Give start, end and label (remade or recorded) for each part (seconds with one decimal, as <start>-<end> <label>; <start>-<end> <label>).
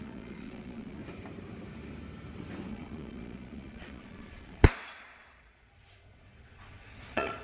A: 0.0-1.0 remade; 1.0-2.7 recorded; 2.7-7.4 remade